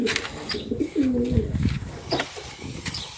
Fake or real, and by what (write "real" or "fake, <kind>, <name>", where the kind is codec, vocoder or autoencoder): real